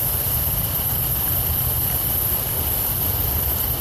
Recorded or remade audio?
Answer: remade